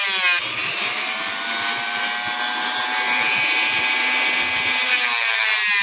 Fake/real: real